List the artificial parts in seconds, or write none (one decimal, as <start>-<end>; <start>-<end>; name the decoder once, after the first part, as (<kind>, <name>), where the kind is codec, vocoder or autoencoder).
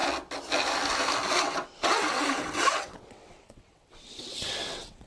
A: 1.4-5.1 (vocoder, WaveNeXt)